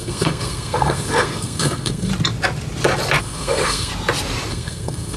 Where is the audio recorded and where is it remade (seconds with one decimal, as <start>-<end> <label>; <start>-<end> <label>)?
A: 0.0-2.1 remade; 2.1-3.2 recorded; 3.2-3.9 remade; 3.9-4.5 recorded; 4.5-5.2 remade

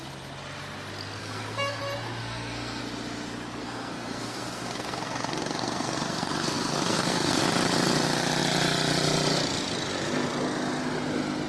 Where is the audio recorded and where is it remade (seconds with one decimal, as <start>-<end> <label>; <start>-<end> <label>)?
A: 0.0-1.2 recorded; 1.2-1.8 remade; 1.8-2.2 recorded; 2.2-2.8 remade; 2.8-3.6 recorded; 3.6-7.4 remade; 7.4-11.5 recorded

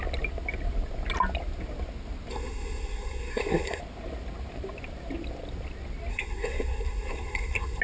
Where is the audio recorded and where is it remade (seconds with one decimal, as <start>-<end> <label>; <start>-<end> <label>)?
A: 0.0-2.3 recorded; 2.3-3.8 remade; 3.8-6.1 recorded; 6.1-7.8 remade

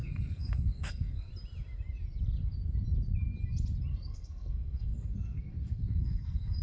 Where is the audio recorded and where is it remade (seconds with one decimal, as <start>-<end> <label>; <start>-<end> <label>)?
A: 0.0-1.3 remade; 1.3-3.9 recorded; 3.9-6.6 remade